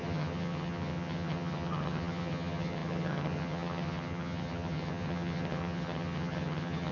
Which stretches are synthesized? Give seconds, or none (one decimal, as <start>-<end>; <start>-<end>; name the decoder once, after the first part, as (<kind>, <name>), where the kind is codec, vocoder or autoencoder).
0.0-6.9 (vocoder, HiFi-GAN)